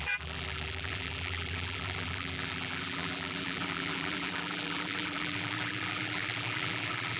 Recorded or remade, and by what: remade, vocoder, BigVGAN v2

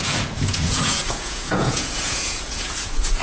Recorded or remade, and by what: remade, vocoder, Vocos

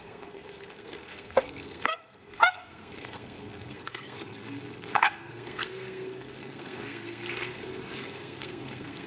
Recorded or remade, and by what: remade, codec, SNAC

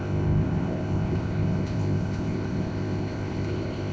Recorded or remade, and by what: remade, codec, ZipCodec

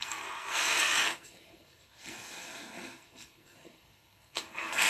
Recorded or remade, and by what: remade, codec, SNAC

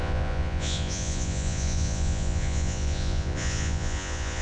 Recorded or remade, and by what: remade, vocoder, Vocos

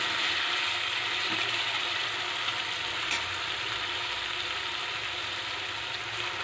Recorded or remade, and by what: recorded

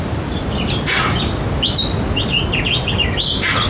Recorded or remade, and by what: recorded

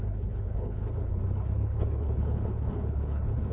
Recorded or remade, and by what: remade, codec, HILCodec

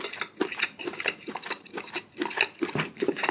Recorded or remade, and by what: remade, vocoder, BigVGAN v2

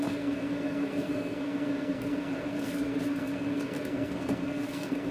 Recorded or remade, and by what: remade, codec, SNAC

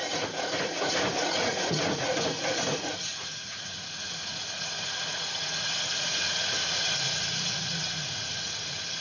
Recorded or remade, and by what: remade, vocoder, Vocos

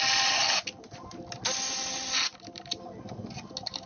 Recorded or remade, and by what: recorded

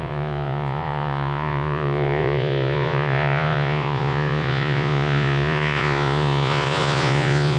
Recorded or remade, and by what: remade, vocoder, Vocos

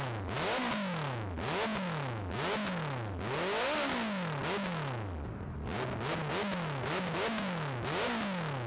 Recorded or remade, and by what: recorded